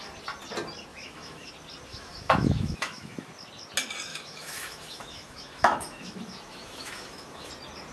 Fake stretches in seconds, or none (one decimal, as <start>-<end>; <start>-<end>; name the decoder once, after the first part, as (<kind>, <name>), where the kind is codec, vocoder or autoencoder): 0.9-1.5 (autoencoder, DAC-VAE); 1.9-3.3; 4.1-7.5

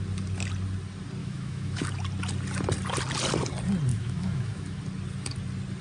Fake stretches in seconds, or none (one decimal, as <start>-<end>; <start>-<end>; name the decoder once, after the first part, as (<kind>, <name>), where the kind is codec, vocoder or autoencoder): 1.2-1.9 (autoencoder, DAC-VAE); 3.9-4.8

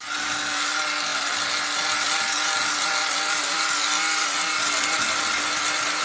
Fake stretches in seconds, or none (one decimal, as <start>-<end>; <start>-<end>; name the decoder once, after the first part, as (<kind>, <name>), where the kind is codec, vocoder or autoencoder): none

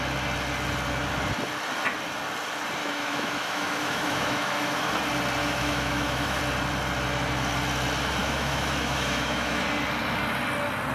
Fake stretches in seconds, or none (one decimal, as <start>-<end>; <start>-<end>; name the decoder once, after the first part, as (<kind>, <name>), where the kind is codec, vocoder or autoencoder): 2.8-4.9 (autoencoder, DAC-VAE); 5.4-6.4; 8.2-9.6

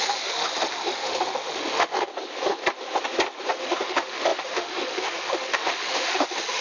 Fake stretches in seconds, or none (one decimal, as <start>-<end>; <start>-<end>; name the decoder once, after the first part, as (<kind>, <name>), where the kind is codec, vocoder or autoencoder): 0.0-2.1 (autoencoder, DAC-VAE); 3.6-6.6

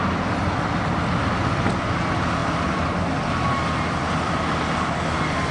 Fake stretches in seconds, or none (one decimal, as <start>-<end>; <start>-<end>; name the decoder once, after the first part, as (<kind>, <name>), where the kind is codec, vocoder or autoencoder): none